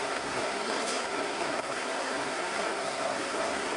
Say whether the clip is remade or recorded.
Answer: remade